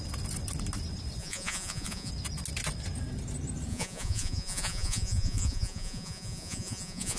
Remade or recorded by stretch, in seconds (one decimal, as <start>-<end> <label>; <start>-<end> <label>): 0.0-1.2 recorded; 1.2-2.1 remade; 2.1-3.7 recorded; 3.7-7.2 remade